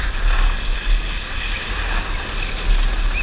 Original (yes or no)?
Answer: yes